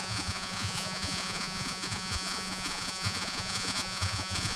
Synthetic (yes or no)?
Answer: yes